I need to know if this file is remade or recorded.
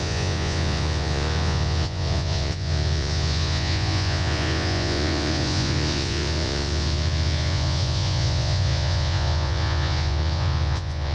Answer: remade